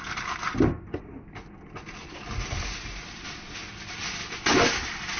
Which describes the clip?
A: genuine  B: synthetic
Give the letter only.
A